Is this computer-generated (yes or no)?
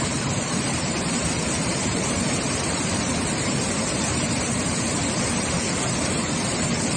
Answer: yes